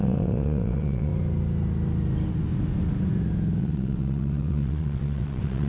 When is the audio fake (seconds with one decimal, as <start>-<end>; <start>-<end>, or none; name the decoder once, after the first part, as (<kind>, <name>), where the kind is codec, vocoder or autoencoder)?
0.0-1.1 (vocoder, WaveNeXt); 3.6-5.7